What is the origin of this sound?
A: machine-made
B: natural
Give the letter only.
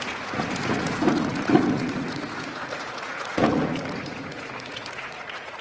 A